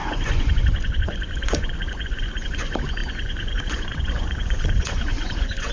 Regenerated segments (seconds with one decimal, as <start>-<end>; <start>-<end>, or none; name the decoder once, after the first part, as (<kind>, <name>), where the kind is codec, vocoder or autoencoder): 0.0-5.7 (vocoder, Vocos)